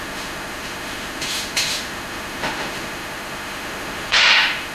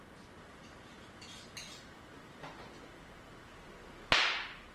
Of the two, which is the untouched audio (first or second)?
second